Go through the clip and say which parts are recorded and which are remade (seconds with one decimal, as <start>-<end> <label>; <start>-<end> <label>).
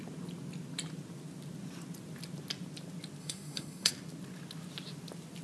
0.0-3.2 recorded; 3.2-3.9 remade; 3.9-5.4 recorded